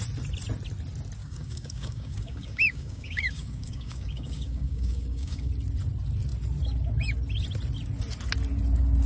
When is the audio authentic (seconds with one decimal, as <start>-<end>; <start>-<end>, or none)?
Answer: 0.0-1.2; 5.5-9.1

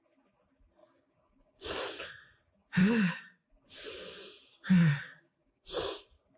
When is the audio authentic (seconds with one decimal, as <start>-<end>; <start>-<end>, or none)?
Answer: 0.0-0.8; 1.8-2.8; 3.5-4.5; 5.7-6.4